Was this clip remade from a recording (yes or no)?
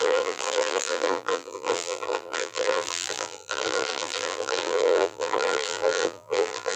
yes